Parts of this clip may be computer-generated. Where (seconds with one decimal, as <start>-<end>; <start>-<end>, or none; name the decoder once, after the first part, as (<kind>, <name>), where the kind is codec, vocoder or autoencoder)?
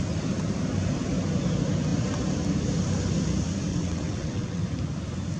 3.7-4.6 (vocoder, WaveNeXt)